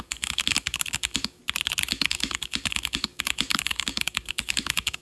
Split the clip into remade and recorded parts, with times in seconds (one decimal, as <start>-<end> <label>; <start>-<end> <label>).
0.0-1.4 remade; 1.4-1.9 recorded; 1.9-5.0 remade

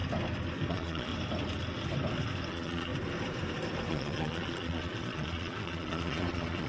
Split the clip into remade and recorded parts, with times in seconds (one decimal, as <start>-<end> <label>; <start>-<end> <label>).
0.0-0.7 recorded; 0.7-1.1 remade; 1.1-2.5 recorded; 2.5-2.9 remade; 2.9-3.9 recorded; 3.9-6.7 remade

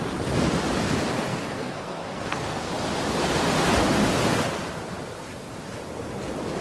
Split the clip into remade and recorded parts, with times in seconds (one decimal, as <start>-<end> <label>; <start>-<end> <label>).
0.0-1.3 recorded; 1.3-2.7 remade; 2.7-6.6 recorded

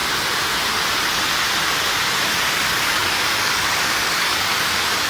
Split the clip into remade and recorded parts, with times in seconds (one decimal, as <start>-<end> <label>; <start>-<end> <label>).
0.0-2.5 recorded; 2.5-5.1 remade

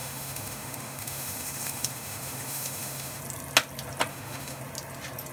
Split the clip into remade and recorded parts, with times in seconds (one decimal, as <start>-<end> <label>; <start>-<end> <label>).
0.0-3.2 remade; 3.2-4.1 recorded; 4.1-4.6 remade; 4.6-5.3 recorded

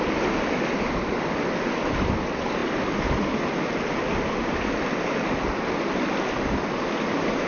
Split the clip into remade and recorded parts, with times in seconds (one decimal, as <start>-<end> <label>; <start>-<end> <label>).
0.0-7.5 recorded

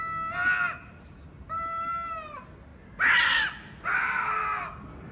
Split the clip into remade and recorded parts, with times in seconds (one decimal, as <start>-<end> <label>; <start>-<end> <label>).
0.0-5.1 recorded

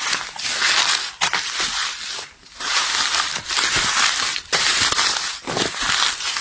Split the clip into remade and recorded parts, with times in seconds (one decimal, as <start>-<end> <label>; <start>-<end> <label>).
0.0-6.4 recorded